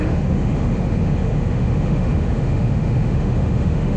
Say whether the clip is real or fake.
fake